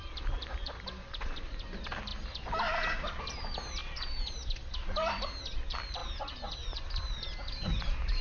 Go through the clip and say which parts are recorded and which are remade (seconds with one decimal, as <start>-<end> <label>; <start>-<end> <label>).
0.0-2.1 remade; 2.1-3.2 recorded; 3.2-3.8 remade; 3.8-5.1 recorded; 5.1-6.0 remade; 6.0-6.9 recorded; 6.9-8.2 remade